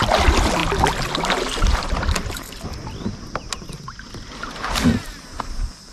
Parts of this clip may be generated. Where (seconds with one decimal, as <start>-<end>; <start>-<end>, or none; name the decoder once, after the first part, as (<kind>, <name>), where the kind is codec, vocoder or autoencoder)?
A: none